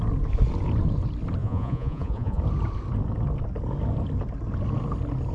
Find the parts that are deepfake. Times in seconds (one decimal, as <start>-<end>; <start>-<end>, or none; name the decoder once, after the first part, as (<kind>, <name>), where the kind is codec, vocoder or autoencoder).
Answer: 1.4-2.4 (vocoder, Vocos)